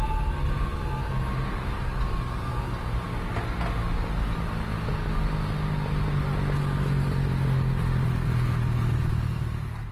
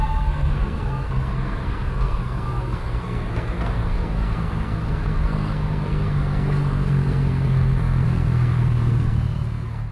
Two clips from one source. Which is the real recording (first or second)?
first